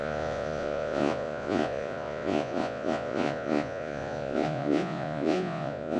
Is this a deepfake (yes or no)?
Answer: yes